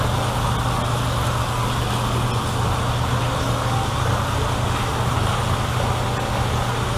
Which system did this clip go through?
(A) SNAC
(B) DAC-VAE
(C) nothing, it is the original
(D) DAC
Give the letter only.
C